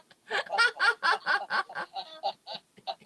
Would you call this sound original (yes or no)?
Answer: yes